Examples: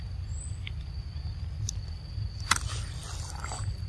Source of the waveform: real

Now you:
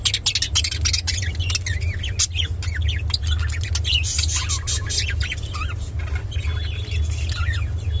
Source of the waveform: real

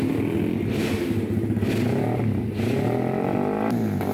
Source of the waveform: real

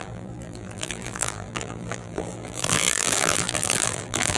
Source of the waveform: fake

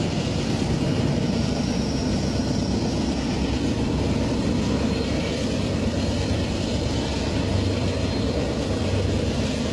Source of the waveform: fake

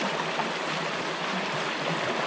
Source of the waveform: fake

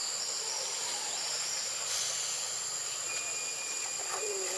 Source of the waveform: real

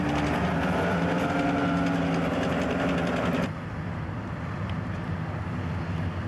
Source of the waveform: real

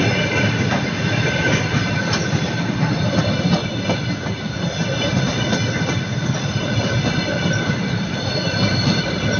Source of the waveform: fake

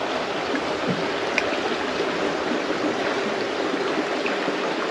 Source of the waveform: real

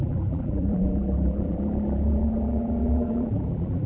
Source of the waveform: fake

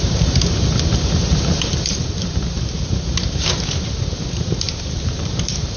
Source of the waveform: fake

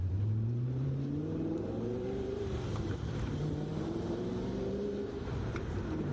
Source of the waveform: fake